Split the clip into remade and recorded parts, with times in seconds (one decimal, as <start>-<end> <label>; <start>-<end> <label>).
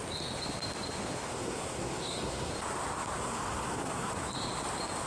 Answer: 0.0-1.3 recorded; 1.3-2.5 remade; 2.5-3.2 recorded; 3.2-4.1 remade; 4.1-5.1 recorded